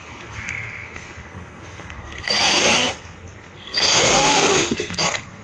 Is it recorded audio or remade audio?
remade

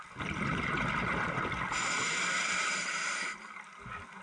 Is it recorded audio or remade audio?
recorded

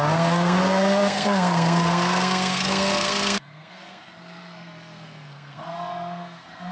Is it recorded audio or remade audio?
remade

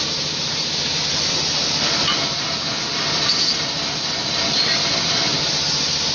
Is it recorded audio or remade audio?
recorded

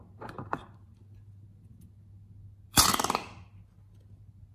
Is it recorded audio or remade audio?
recorded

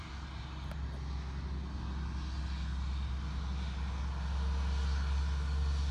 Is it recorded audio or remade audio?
recorded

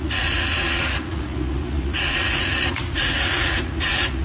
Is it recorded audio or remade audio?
remade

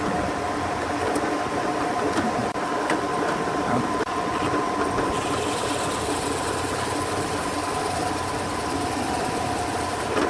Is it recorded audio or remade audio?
recorded